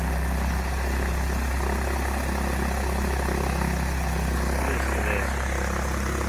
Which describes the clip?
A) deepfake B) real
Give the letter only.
B